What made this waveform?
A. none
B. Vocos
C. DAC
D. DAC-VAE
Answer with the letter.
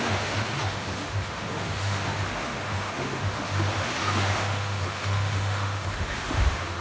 D